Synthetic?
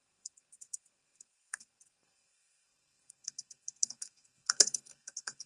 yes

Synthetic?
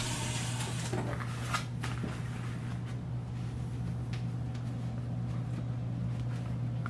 no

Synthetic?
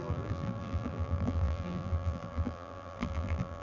yes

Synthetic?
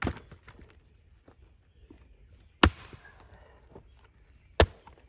no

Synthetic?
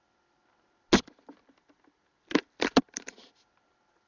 no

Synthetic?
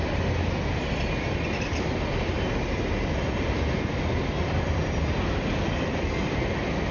no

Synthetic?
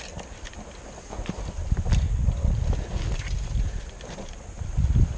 no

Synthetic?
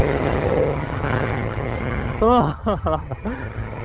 yes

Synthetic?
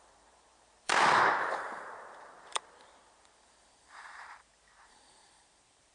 yes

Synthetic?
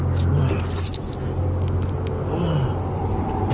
no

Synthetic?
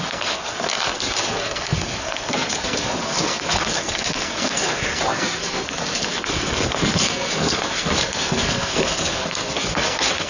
yes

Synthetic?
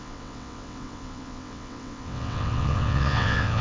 yes